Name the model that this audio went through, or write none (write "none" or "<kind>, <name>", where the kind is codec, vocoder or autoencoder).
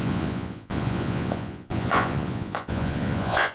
vocoder, Vocos